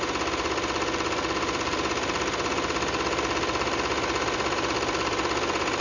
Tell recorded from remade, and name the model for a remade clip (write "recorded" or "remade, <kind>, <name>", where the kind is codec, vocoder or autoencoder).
remade, vocoder, BigVGAN v2